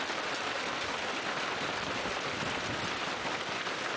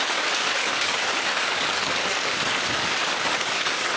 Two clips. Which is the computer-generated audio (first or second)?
second